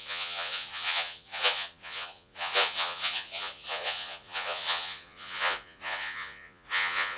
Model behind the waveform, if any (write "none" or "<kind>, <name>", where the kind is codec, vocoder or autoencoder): vocoder, Vocos